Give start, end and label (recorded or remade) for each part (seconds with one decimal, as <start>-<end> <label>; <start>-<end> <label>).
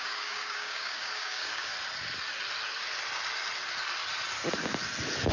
0.0-1.7 remade; 1.7-5.3 recorded